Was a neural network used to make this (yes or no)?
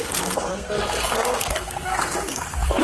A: yes